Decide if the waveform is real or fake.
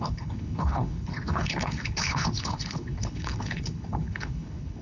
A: fake